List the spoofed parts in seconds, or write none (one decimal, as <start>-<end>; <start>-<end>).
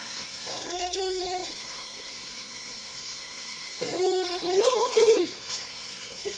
0.0-6.4